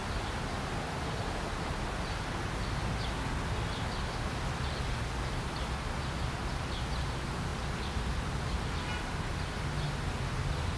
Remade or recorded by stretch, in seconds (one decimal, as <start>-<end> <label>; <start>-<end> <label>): 0.0-10.8 recorded